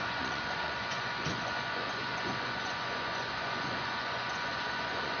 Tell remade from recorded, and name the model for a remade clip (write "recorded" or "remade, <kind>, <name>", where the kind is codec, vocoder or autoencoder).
remade, vocoder, Vocos